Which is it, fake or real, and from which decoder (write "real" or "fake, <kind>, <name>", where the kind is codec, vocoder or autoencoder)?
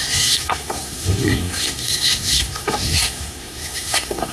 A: fake, codec, SNAC